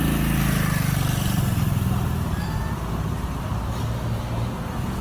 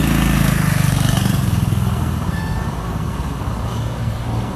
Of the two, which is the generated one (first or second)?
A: second